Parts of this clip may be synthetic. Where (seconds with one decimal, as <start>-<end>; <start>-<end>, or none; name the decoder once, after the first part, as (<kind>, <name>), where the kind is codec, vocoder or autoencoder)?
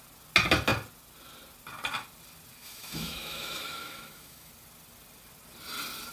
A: 2.6-4.5 (autoencoder, DAC-VAE)